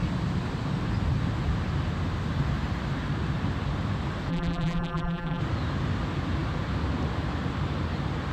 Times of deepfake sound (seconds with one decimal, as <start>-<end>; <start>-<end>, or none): 4.3-5.4